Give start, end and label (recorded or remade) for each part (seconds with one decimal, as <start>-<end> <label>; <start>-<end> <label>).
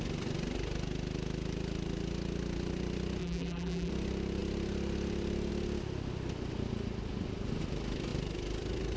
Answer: 0.0-3.2 recorded; 3.2-3.9 remade; 3.9-9.0 recorded